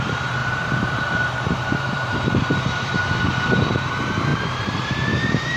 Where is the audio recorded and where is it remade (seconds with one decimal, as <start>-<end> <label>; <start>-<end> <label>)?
0.0-5.6 remade